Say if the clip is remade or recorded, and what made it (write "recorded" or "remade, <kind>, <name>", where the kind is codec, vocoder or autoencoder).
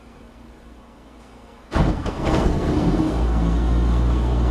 remade, codec, SNAC